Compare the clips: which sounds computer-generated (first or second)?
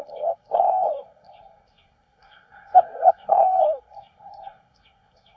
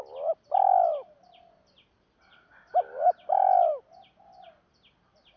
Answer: first